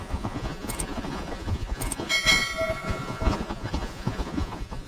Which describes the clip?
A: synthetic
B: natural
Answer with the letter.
A